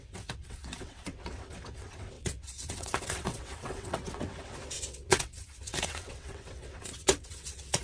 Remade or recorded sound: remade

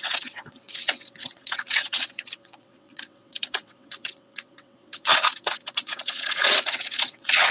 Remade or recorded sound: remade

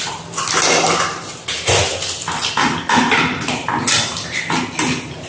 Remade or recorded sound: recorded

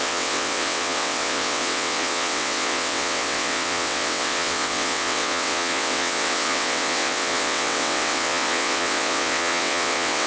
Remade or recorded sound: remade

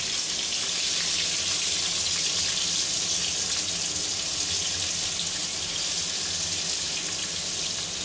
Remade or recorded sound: recorded